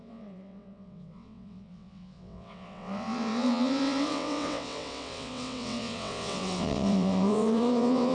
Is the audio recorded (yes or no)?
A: no